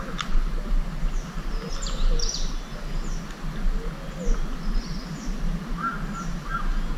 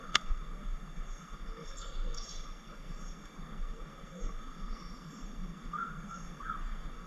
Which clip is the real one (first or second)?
first